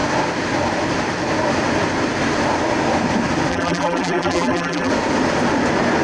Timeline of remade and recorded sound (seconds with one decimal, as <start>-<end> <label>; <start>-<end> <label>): 0.0-3.5 recorded; 3.5-4.9 remade; 4.9-6.0 recorded